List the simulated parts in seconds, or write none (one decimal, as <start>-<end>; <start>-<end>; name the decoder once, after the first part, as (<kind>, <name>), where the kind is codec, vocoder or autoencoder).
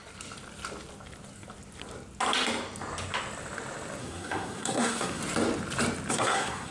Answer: 4.0-5.2 (codec, SNAC); 6.1-6.7